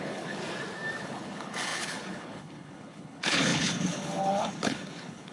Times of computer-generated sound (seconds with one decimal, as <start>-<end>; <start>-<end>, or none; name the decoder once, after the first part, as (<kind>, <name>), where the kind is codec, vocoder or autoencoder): 0.0-0.4 (codec, HILCodec); 1.0-5.3